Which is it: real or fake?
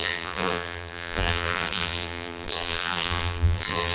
fake